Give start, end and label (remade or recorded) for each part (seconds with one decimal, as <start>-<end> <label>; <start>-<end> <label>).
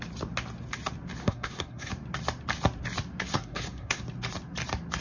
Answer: 0.0-1.2 recorded; 1.2-1.9 remade; 1.9-3.3 recorded; 3.3-4.0 remade; 4.0-5.0 recorded